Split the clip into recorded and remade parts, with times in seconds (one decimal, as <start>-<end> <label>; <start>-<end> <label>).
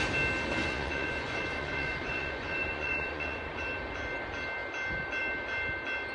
0.0-0.6 recorded; 0.6-3.6 remade; 3.6-6.1 recorded